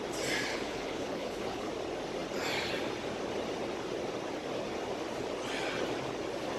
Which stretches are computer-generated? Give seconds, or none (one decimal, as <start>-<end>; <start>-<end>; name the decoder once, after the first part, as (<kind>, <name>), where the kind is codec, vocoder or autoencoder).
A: 0.5-1.7 (codec, HILCodec)

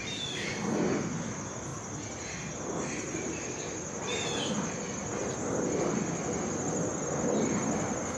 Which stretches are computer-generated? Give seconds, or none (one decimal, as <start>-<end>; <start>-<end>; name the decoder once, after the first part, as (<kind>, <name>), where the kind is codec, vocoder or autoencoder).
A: none

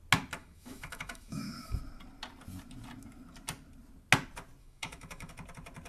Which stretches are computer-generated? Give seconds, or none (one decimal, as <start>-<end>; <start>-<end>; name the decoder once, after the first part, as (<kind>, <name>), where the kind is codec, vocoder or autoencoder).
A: 0.4-1.8 (autoencoder, DAC-VAE); 4.6-5.3

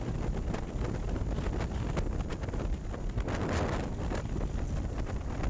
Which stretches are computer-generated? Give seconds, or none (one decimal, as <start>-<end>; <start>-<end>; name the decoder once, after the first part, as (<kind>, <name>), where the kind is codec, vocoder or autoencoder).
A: none

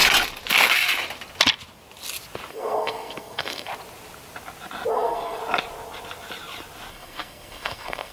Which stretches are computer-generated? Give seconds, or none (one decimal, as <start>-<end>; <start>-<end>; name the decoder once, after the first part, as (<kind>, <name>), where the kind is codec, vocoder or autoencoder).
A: 2.5-3.7 (codec, SNAC); 4.9-5.4; 6.9-8.1

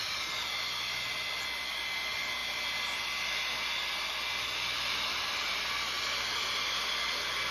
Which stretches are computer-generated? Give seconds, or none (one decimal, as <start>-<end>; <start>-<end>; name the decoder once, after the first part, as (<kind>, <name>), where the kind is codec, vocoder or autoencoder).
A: 5.1-5.7 (vocoder, BigVGAN v2)

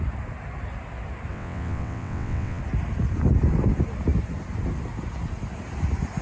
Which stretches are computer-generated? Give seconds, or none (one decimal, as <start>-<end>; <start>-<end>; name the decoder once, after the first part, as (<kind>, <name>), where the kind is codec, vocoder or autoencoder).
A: 1.3-2.6 (vocoder, WaveNeXt)